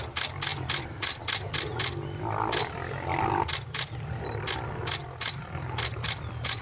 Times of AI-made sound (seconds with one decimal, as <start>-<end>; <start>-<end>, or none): none